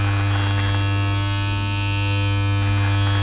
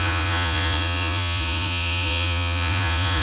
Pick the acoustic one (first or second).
first